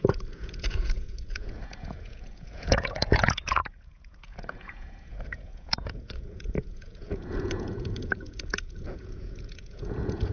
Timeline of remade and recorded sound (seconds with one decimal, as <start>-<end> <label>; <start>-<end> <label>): 0.0-10.3 remade